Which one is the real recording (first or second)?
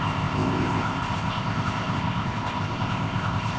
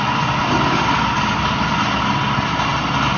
second